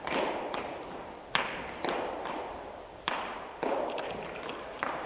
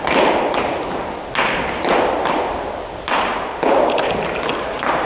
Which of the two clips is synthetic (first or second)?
first